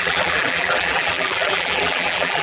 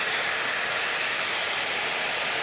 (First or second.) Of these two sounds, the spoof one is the first